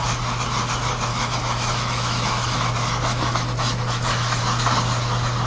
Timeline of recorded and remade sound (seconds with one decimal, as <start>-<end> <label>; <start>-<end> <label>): 0.0-1.1 recorded; 1.1-2.7 remade; 2.7-3.1 recorded; 3.1-4.4 remade; 4.4-5.5 recorded